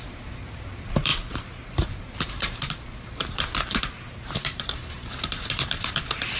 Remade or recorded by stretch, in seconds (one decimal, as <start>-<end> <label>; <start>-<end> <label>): 0.0-6.4 remade